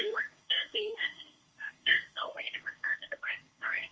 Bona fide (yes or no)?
no